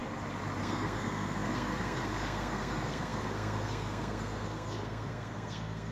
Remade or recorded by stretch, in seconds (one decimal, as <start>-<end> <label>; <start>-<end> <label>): 0.0-0.6 recorded; 0.6-5.9 remade